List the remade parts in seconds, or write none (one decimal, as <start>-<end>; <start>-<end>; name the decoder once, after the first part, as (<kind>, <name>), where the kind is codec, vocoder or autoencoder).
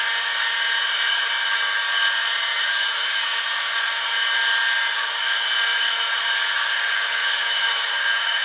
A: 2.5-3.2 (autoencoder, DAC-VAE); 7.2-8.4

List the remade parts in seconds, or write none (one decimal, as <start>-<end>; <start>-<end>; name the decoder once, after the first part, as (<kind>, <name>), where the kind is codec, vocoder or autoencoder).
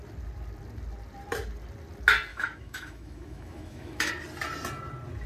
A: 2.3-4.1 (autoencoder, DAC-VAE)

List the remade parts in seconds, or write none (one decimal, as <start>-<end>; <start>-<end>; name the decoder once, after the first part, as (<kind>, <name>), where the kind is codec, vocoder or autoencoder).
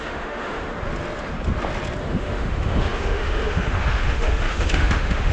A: 0.0-0.7 (autoencoder, DAC-VAE); 2.0-5.3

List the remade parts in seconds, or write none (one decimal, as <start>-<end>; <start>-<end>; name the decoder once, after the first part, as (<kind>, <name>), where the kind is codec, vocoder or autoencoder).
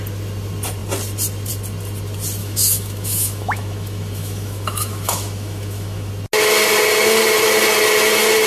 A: 2.4-6.1 (autoencoder, DAC-VAE)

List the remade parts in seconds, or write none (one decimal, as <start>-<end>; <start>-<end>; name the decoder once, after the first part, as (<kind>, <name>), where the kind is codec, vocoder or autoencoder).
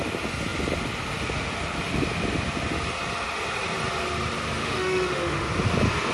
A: 4.6-5.5 (autoencoder, DAC-VAE)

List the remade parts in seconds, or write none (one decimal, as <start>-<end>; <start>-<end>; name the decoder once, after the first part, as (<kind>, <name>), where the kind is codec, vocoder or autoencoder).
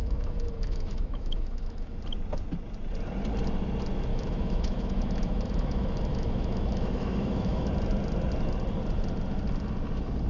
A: 0.0-2.0 (autoencoder, DAC-VAE); 4.1-7.7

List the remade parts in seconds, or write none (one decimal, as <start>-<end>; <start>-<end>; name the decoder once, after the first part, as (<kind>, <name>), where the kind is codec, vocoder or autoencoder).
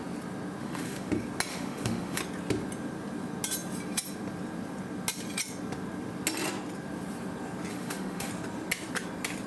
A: 0.6-1.1 (autoencoder, DAC-VAE); 1.5-2.2; 7.7-8.3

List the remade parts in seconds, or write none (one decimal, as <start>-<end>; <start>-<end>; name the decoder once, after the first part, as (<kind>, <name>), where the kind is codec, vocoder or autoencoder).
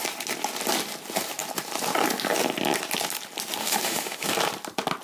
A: 3.6-4.3 (autoencoder, DAC-VAE)